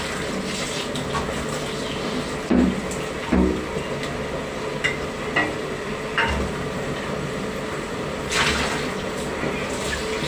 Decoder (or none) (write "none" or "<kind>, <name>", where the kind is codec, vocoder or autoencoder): none